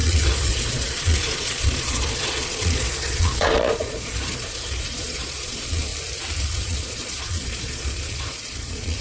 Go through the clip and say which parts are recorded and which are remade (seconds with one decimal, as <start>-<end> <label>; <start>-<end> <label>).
0.0-5.9 remade; 5.9-6.4 recorded; 6.4-9.0 remade